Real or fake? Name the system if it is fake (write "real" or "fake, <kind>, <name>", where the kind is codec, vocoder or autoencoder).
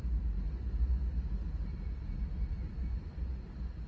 real